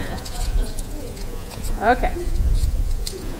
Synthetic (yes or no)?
yes